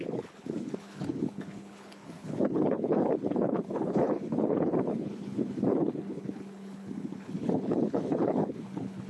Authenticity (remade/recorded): remade